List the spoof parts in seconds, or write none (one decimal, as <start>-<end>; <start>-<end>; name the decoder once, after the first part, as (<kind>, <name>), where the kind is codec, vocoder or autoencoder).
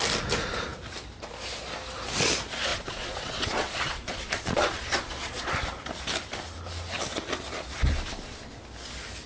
2.7-5.5 (vocoder, Vocos)